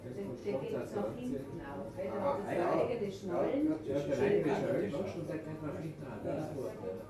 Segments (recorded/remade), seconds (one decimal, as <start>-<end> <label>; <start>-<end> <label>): 0.0-7.1 recorded